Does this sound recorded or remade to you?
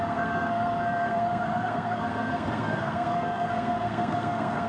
remade